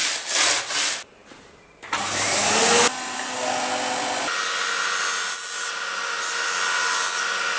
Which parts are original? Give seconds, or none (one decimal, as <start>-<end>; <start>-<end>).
0.0-7.6